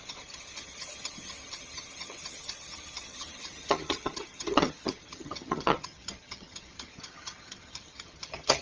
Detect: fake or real fake